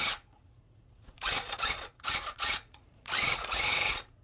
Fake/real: fake